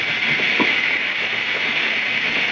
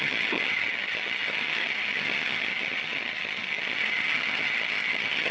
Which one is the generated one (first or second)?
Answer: second